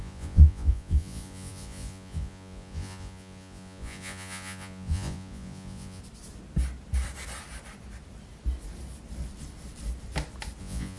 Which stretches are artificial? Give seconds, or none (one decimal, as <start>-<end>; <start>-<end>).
0.0-6.0; 10.6-11.0